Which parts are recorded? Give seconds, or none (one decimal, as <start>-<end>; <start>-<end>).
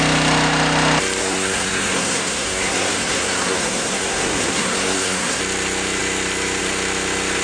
0.0-1.2; 5.4-7.4